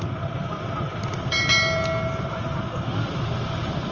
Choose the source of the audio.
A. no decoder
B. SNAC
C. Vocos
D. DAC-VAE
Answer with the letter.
A